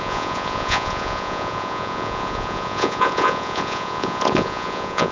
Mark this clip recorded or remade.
remade